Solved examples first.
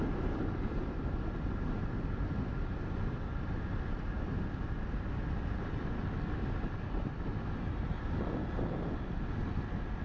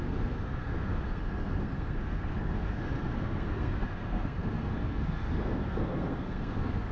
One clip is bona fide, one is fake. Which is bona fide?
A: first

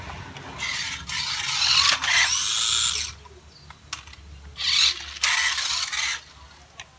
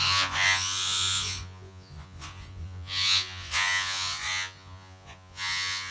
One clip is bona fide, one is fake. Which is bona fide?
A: first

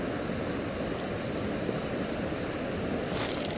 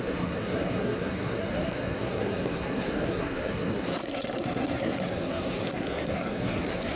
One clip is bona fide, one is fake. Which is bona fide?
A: first